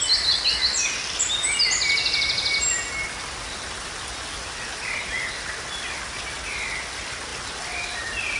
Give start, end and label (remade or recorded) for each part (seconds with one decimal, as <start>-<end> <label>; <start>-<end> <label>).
0.0-8.4 recorded